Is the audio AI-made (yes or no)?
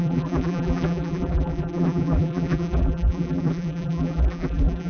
yes